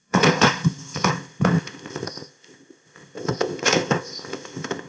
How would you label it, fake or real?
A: fake